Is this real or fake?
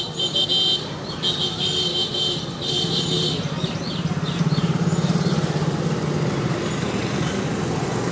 real